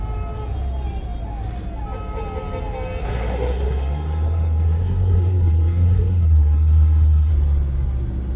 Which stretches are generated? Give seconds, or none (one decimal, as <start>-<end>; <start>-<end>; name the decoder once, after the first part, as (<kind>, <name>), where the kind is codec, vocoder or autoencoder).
3.0-7.3 (codec, SNAC)